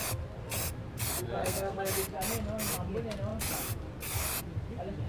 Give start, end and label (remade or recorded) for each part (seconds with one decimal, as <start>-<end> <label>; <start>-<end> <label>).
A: 0.0-1.4 recorded; 1.4-1.9 remade; 1.9-5.1 recorded